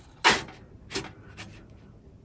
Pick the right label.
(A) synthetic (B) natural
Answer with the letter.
B